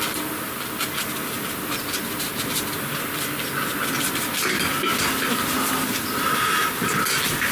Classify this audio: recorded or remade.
recorded